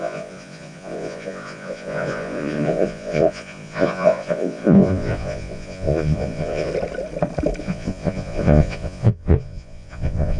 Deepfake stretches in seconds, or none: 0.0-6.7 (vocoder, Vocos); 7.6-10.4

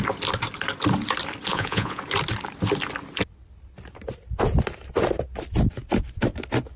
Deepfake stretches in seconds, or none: 1.5-2.0 (vocoder, Vocos)